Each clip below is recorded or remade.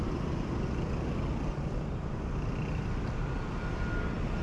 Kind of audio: recorded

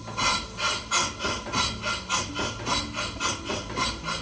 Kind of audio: recorded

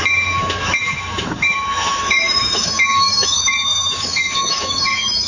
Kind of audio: remade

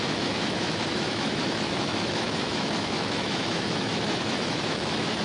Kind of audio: remade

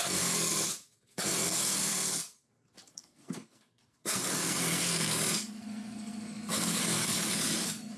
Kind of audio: remade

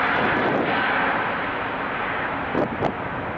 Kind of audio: recorded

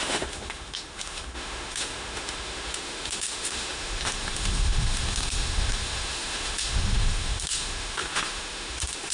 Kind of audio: remade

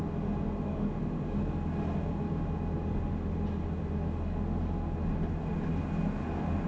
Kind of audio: recorded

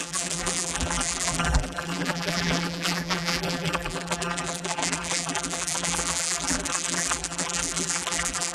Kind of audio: remade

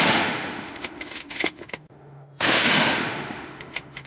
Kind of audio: remade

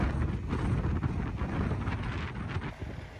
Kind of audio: recorded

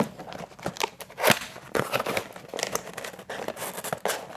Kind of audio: remade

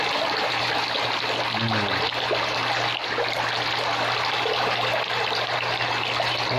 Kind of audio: recorded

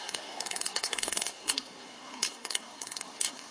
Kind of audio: remade